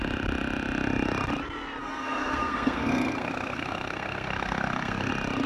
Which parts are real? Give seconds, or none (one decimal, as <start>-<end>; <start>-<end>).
0.0-1.8; 5.1-5.5